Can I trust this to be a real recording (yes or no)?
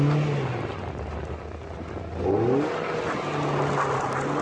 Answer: yes